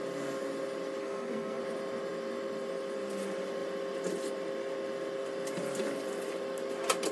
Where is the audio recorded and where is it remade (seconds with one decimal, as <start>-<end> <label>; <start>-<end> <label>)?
0.0-1.0 recorded; 1.0-1.6 remade; 1.6-7.1 recorded